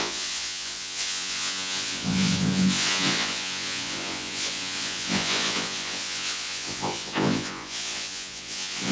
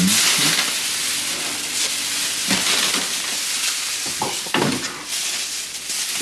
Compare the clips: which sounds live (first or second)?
second